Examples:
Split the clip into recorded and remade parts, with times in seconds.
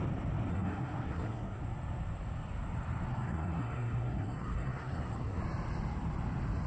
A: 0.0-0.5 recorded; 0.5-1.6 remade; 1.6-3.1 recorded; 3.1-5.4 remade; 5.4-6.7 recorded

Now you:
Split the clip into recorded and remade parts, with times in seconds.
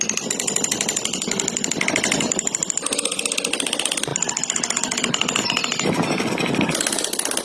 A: 0.0-7.4 recorded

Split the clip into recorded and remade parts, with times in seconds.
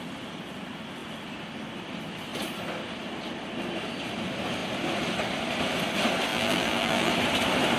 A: 0.0-6.3 recorded; 6.3-7.1 remade; 7.1-7.8 recorded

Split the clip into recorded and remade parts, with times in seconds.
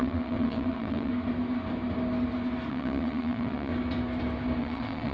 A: 0.0-1.1 remade; 1.1-2.7 recorded; 2.7-3.7 remade; 3.7-4.6 recorded; 4.6-5.1 remade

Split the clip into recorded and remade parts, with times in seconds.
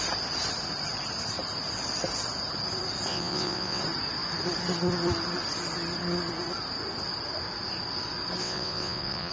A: 0.0-3.1 recorded; 3.1-3.8 remade; 3.8-8.4 recorded; 8.4-9.3 remade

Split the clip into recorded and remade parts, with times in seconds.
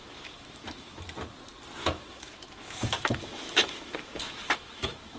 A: 0.0-1.0 remade; 1.0-1.8 recorded; 1.8-5.2 remade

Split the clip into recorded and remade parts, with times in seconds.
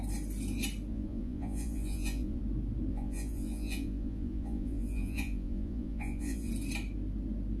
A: 0.0-0.9 recorded; 0.9-2.4 remade; 2.4-2.9 recorded; 2.9-6.5 remade; 6.5-7.6 recorded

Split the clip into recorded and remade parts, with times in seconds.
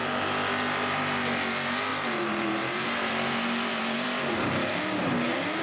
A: 0.0-1.9 recorded; 1.9-4.5 remade; 4.5-5.6 recorded